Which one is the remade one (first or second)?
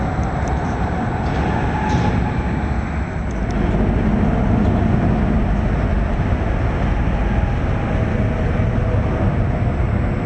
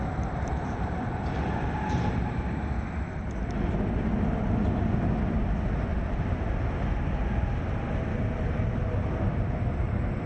second